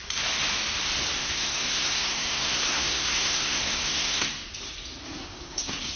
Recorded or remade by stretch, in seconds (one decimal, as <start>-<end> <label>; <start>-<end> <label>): 0.0-1.2 recorded; 1.2-4.4 remade; 4.4-5.0 recorded; 5.0-6.0 remade